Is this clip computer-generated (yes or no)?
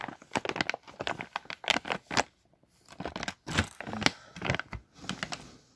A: no